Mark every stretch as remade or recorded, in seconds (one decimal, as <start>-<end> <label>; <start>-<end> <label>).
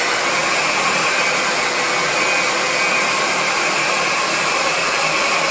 0.0-0.4 remade; 0.4-2.9 recorded; 2.9-5.5 remade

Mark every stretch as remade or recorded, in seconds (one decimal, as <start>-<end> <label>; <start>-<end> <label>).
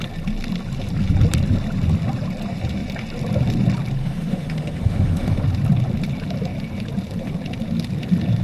0.0-4.0 recorded; 4.0-5.4 remade; 5.4-8.4 recorded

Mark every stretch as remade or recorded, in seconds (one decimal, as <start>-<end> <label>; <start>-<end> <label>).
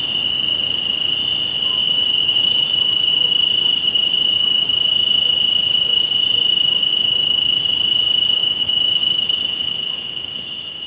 0.0-1.8 recorded; 1.8-3.1 remade; 3.1-6.9 recorded; 6.9-7.6 remade; 7.6-8.4 recorded; 8.4-10.9 remade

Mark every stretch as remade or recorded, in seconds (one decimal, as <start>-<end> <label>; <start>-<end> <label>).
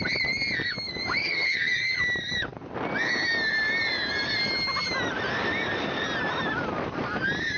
0.0-1.2 recorded; 1.2-2.0 remade; 2.0-7.6 recorded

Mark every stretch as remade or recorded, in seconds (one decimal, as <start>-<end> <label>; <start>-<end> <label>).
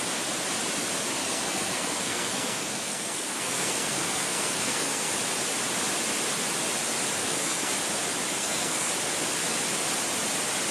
0.0-1.2 recorded; 1.2-5.1 remade; 5.1-7.2 recorded; 7.2-7.7 remade; 7.7-8.3 recorded; 8.3-8.9 remade; 8.9-10.7 recorded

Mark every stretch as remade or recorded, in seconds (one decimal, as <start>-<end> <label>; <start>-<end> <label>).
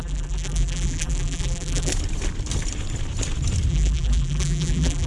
0.0-1.9 remade; 1.9-3.7 recorded; 3.7-5.1 remade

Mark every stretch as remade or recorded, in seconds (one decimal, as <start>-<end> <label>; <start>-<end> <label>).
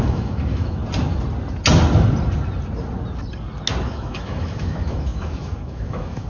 0.0-0.8 remade; 0.8-3.8 recorded; 3.8-6.3 remade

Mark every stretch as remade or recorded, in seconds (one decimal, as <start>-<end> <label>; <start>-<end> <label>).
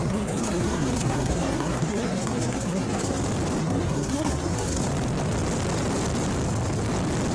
0.0-3.2 remade; 3.2-3.6 recorded; 3.6-4.8 remade; 4.8-7.3 recorded